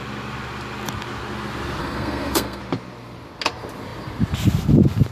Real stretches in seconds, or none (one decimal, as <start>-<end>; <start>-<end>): 0.0-1.8; 2.6-5.1